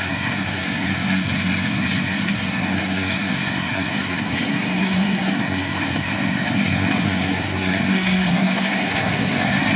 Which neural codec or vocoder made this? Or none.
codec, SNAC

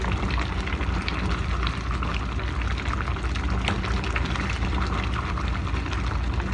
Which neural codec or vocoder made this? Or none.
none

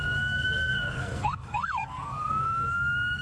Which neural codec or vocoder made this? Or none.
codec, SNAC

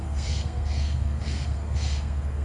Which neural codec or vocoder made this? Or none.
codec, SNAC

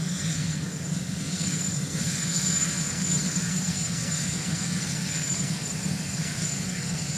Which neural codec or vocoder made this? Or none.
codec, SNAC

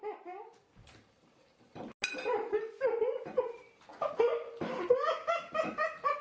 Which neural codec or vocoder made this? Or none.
none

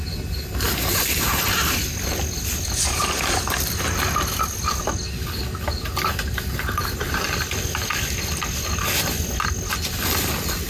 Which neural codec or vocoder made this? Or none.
none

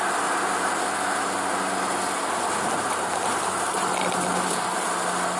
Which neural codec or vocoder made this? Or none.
none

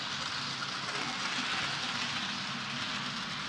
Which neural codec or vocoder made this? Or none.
none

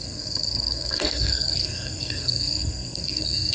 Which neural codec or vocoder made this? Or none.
codec, SNAC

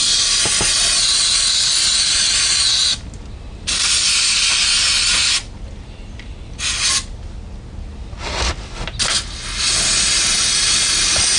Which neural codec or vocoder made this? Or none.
none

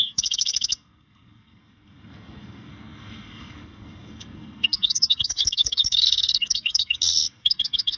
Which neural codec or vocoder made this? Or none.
codec, SNAC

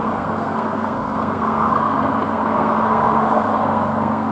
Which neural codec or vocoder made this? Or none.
codec, SNAC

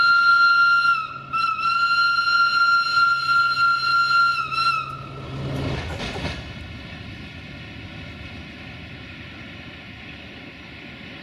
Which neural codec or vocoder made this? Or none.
none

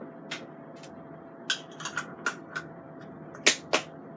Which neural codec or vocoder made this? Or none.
none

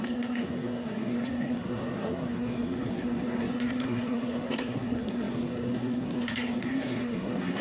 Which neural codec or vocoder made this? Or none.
codec, SNAC